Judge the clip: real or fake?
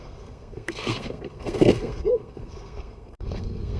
fake